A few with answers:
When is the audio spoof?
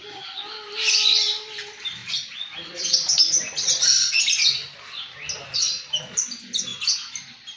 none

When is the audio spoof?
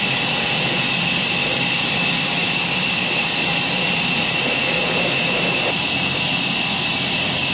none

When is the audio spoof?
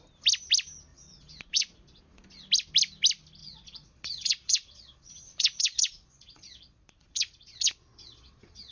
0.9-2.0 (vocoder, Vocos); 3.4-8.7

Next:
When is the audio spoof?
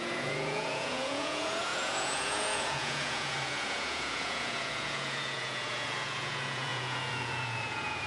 0.0-8.1 (vocoder, Vocos)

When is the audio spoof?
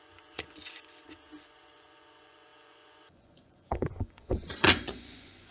0.0-5.5 (vocoder, Vocos)